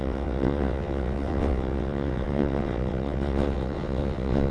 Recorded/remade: remade